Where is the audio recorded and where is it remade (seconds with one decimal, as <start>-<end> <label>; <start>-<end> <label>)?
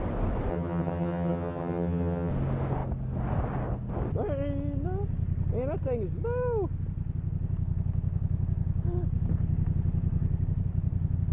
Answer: 0.0-0.5 recorded; 0.5-2.3 remade; 2.3-11.3 recorded